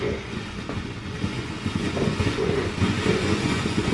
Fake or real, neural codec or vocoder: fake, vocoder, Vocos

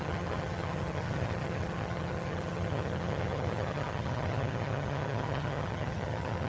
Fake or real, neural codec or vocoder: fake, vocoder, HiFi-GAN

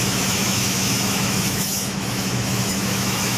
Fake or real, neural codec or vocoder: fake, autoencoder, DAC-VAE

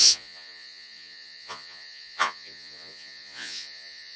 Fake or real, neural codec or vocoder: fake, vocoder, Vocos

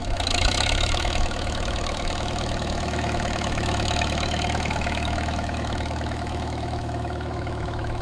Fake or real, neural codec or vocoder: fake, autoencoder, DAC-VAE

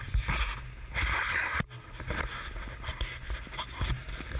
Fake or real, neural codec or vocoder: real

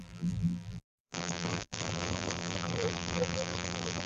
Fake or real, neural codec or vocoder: fake, vocoder, BigVGAN v2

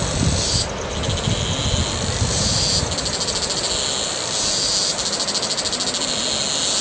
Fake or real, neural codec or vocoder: real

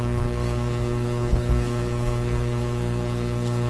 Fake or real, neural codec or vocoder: fake, codec, SNAC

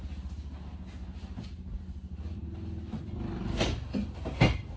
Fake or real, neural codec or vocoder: real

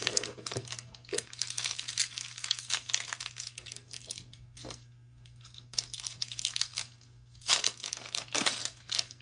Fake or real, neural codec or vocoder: fake, codec, SNAC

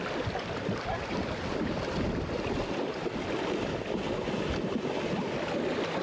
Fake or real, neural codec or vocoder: real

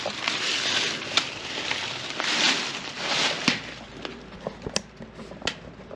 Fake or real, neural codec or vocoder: real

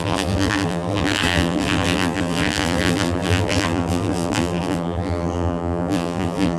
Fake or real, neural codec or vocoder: fake, vocoder, BigVGAN v2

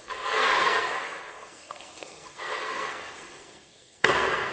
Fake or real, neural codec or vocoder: fake, codec, SNAC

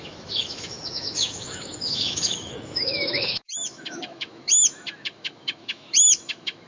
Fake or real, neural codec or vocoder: fake, autoencoder, DAC-VAE